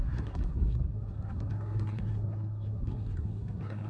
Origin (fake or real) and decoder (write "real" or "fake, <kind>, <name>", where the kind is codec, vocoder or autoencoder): fake, codec, SNAC